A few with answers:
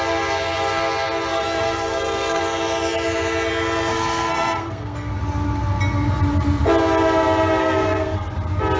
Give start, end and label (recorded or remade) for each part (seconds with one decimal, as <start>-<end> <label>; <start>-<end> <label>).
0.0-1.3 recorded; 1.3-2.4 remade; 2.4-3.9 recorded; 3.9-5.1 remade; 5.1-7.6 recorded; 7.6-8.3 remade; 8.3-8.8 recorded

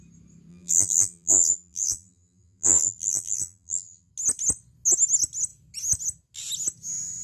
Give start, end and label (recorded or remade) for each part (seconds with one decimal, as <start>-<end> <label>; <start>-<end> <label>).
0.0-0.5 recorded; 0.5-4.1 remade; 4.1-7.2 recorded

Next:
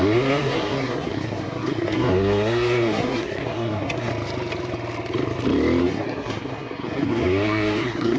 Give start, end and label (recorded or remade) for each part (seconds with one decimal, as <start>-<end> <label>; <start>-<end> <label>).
0.0-4.1 remade; 4.1-5.8 recorded; 5.8-8.2 remade

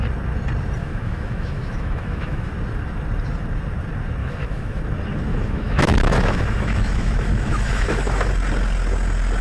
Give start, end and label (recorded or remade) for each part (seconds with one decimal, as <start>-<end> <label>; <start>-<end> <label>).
0.0-0.8 recorded; 0.8-2.5 remade; 2.5-4.2 recorded; 4.2-4.8 remade; 4.8-5.3 recorded; 5.3-8.3 remade; 8.3-9.4 recorded

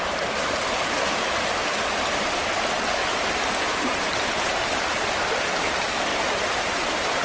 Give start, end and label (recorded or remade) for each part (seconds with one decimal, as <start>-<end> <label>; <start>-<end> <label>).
0.0-1.6 recorded; 1.6-2.1 remade; 2.1-3.0 recorded; 3.0-4.8 remade; 4.8-6.1 recorded; 6.1-7.2 remade

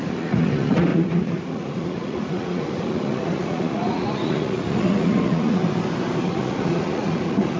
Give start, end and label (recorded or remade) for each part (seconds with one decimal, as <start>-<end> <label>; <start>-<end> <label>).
0.0-5.6 remade; 5.6-6.2 recorded; 6.2-7.6 remade